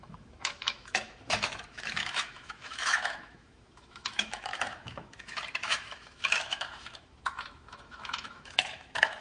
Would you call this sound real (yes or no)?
no